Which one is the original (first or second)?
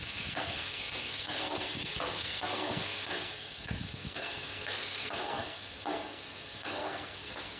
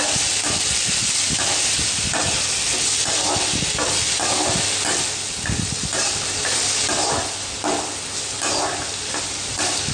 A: second